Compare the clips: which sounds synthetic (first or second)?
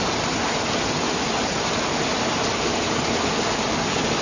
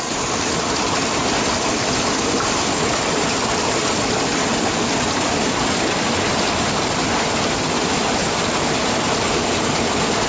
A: second